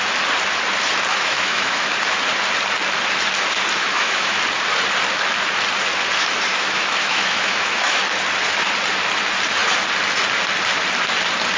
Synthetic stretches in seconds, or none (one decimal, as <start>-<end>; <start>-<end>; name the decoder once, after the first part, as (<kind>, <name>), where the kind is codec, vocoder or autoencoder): 1.1-1.9 (autoencoder, DAC-VAE); 3.8-4.4; 6.5-8.0